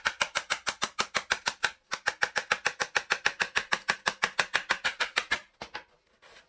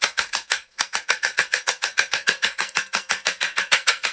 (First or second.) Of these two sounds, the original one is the first